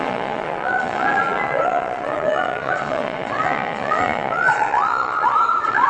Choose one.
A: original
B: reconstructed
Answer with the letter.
B